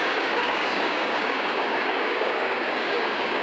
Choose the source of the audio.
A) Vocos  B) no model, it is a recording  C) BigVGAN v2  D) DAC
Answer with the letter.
D